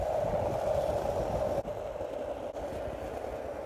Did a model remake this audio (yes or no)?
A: no